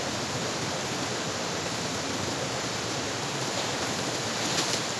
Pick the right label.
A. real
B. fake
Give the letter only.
A